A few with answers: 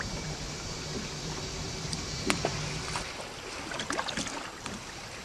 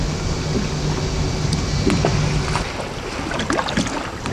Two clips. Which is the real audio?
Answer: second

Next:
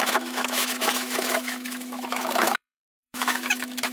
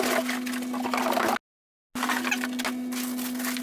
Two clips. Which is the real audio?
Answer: second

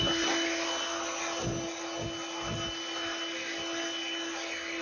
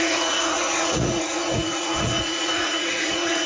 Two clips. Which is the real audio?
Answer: first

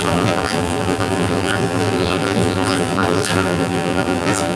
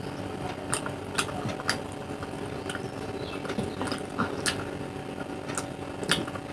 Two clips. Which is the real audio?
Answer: second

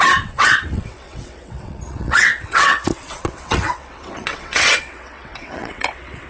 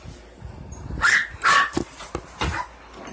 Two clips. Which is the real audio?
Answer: second